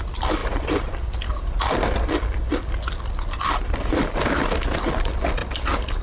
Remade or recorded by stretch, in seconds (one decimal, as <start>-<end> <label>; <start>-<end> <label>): 0.0-6.0 recorded